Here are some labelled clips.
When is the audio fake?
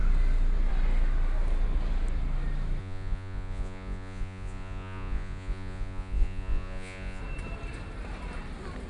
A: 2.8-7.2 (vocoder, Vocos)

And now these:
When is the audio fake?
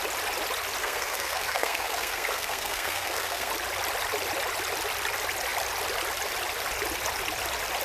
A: 0.8-3.5 (codec, SNAC)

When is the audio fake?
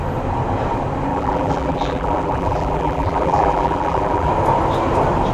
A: 1.1-4.3 (vocoder, BigVGAN v2)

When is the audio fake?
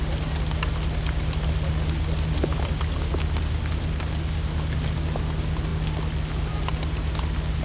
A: none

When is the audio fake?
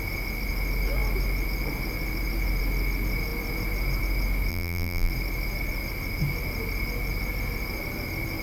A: 4.5-5.1 (vocoder, BigVGAN v2)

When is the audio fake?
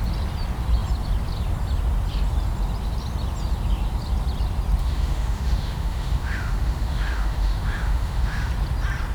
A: 4.8-8.5 (autoencoder, DAC-VAE)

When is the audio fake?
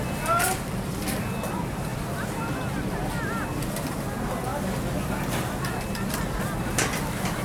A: none